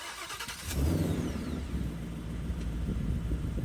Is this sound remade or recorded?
remade